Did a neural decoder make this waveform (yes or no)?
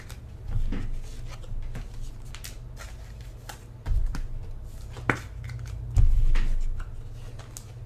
no